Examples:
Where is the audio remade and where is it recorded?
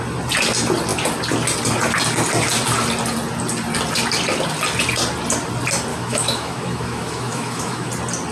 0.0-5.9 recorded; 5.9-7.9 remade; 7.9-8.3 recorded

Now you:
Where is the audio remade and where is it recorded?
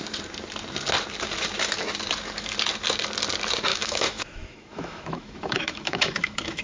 0.0-3.7 recorded; 3.7-6.6 remade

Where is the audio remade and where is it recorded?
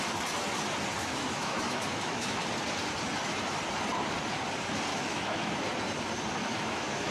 0.0-1.0 recorded; 1.0-2.5 remade; 2.5-4.9 recorded; 4.9-5.5 remade; 5.5-6.4 recorded; 6.4-7.1 remade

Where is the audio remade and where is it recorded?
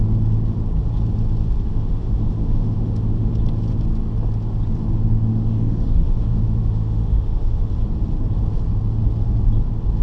0.0-1.7 recorded; 1.7-3.3 remade; 3.3-5.3 recorded; 5.3-7.7 remade; 7.7-10.0 recorded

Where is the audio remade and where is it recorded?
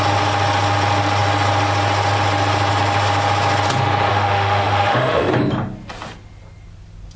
0.0-4.1 recorded; 4.1-5.3 remade; 5.3-7.2 recorded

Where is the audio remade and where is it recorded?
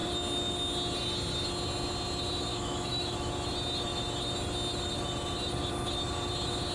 0.0-2.5 recorded; 2.5-3.3 remade; 3.3-6.7 recorded